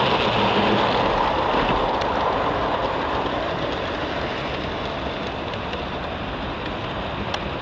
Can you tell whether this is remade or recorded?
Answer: recorded